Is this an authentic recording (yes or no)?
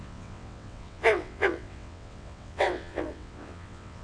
no